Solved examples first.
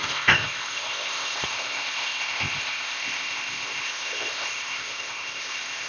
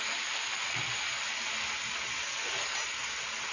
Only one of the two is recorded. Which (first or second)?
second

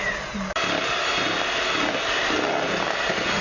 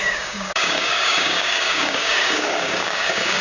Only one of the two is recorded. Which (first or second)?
first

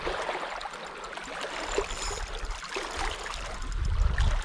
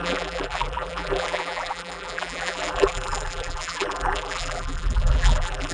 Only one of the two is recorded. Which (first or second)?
first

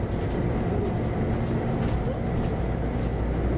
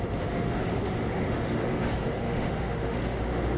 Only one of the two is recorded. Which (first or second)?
first